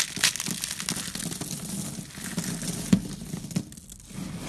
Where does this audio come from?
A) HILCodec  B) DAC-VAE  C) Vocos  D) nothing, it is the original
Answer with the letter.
D